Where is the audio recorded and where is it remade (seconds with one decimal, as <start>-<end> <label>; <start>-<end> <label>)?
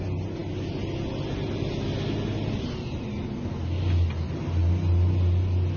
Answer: 0.0-5.8 recorded